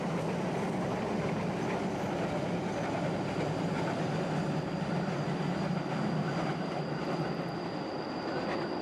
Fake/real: real